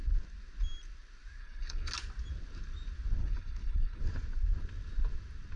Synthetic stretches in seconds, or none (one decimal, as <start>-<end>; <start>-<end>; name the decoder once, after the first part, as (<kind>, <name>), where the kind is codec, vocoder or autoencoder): 1.4-1.9 (codec, HILCodec); 3.2-4.0